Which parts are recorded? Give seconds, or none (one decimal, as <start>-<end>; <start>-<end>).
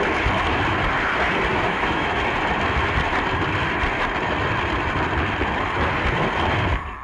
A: 0.0-1.5; 2.2-7.0